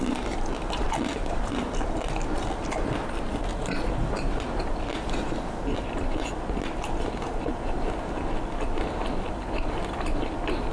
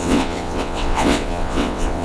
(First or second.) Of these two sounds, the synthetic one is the second